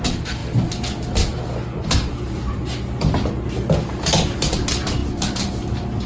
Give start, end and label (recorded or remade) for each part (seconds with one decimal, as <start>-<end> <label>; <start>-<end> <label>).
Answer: 0.0-0.4 remade; 0.4-3.7 recorded; 3.7-6.1 remade